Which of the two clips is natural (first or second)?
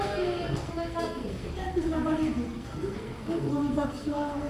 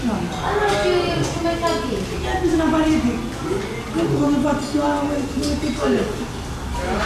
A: second